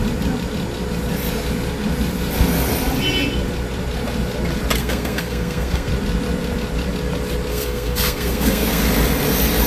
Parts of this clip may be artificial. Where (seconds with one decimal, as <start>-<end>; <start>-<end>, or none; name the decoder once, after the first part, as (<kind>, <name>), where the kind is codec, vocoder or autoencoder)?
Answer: 4.8-5.9 (codec, SNAC); 7.5-8.8